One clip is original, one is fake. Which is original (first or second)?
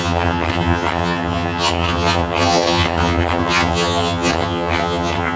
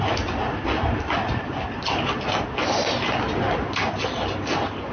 second